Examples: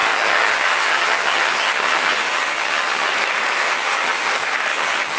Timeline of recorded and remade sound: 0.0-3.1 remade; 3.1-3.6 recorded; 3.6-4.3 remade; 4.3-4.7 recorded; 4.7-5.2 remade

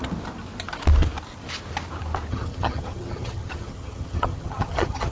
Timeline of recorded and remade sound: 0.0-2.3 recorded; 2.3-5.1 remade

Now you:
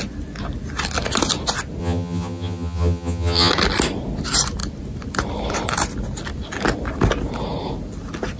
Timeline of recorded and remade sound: 0.0-1.8 recorded; 1.8-3.5 remade; 3.5-8.4 recorded